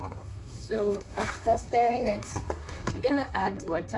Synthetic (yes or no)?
yes